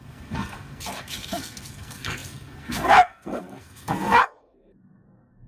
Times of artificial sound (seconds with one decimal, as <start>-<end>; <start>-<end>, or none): 0.0-5.5